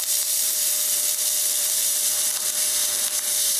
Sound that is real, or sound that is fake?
fake